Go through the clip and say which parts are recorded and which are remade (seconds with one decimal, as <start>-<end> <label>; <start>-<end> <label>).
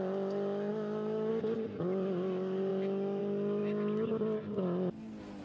0.0-0.7 recorded; 0.7-1.3 remade; 1.3-2.7 recorded; 2.7-3.2 remade; 3.2-5.4 recorded